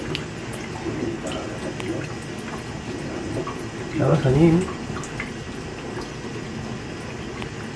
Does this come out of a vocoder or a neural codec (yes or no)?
no